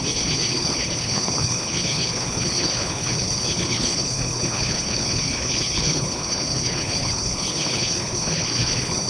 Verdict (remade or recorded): remade